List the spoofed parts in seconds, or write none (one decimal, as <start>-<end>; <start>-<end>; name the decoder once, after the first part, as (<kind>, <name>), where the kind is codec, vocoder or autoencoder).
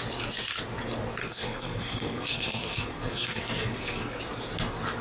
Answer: 1.2-4.2 (codec, SNAC)